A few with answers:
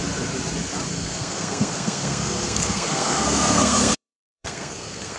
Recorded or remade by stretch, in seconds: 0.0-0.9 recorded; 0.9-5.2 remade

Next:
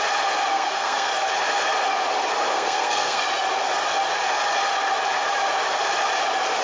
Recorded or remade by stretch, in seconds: 0.0-0.5 recorded; 0.5-1.1 remade; 1.1-2.5 recorded; 2.5-3.2 remade; 3.2-6.6 recorded

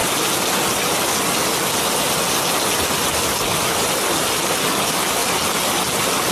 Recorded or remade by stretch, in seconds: 0.0-6.3 recorded

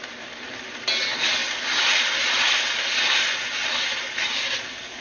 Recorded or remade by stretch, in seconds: 0.0-5.0 recorded